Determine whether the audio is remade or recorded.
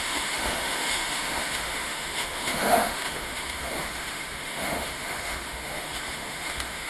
remade